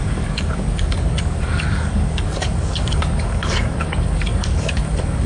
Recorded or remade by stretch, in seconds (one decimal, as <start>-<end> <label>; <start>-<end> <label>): 0.0-5.3 remade